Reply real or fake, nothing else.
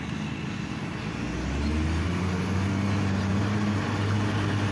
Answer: real